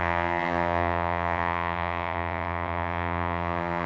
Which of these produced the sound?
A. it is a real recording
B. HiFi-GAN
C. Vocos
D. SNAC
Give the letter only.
B